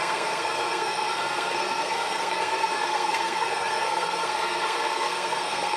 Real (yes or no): no